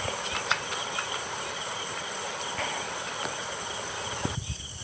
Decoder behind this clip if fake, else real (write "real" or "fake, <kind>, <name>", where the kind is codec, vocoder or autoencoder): real